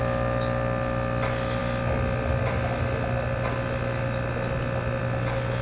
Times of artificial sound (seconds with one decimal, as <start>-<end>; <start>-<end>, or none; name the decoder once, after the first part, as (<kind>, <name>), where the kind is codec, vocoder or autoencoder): none